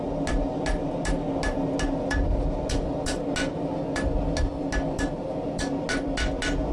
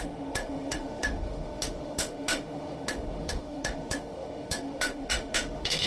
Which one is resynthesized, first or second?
second